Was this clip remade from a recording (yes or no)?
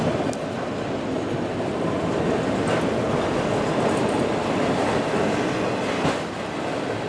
no